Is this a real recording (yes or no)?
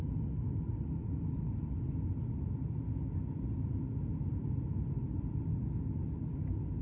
yes